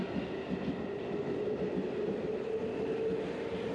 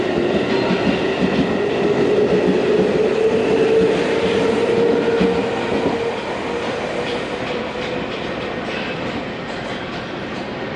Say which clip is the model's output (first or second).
first